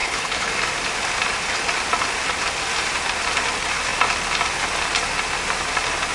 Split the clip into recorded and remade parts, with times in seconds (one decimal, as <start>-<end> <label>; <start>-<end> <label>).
0.0-0.5 remade; 0.5-6.1 recorded